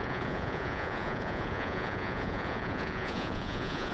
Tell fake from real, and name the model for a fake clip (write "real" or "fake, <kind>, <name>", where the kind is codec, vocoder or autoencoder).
fake, vocoder, Vocos